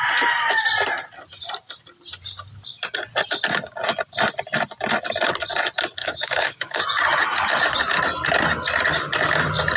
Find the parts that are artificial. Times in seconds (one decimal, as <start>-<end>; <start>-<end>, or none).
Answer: 6.0-6.8